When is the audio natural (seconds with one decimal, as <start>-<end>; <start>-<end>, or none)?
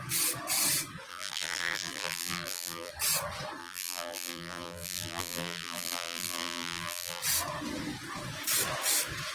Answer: 0.0-1.1; 2.9-3.6; 7.2-9.3